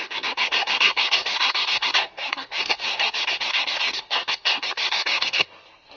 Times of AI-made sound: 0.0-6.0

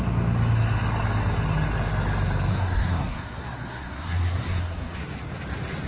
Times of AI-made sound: 2.5-5.0

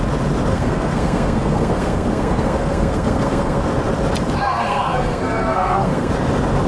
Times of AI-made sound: 0.5-3.6; 4.4-6.1

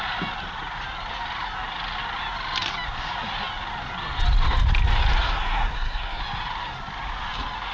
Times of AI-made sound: 5.1-6.2

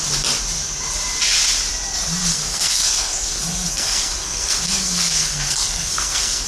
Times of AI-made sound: 2.3-6.5

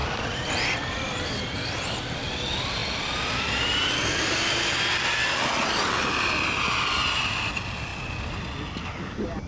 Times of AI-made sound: none